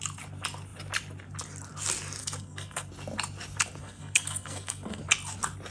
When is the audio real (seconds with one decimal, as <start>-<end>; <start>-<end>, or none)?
0.0-2.2; 2.9-3.8; 5.0-5.7